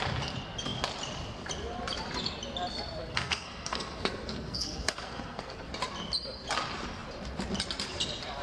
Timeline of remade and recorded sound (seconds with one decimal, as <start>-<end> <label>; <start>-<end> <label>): 0.0-3.0 recorded; 3.0-5.7 remade; 5.7-8.4 recorded